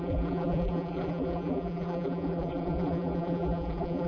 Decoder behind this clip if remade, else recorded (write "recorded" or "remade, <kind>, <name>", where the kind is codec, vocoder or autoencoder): remade, vocoder, BigVGAN v2